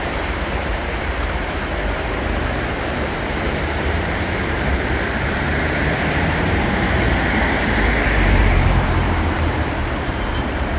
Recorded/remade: remade